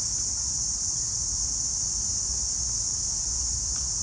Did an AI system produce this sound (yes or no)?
no